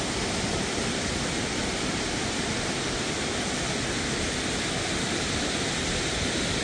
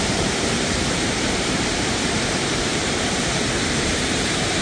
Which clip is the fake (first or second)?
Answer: second